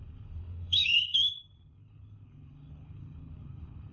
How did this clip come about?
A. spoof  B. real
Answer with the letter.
A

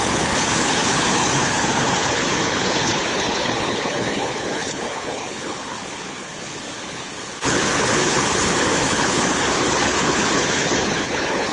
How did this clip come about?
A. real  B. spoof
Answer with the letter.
B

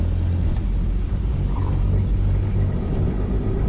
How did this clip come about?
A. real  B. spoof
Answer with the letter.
A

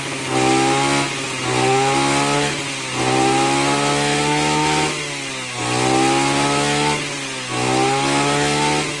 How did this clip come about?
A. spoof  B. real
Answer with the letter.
B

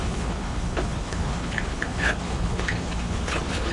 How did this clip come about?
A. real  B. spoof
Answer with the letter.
B